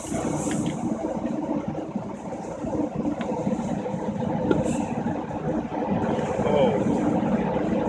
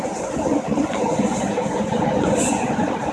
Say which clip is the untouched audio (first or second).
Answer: first